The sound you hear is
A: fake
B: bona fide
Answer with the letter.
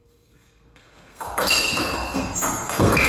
A